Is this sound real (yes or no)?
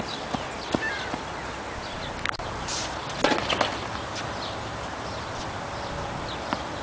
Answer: yes